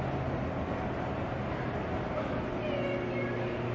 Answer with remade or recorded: recorded